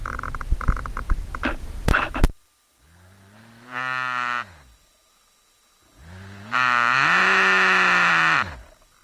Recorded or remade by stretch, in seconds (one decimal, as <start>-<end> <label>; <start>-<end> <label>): 0.0-9.0 recorded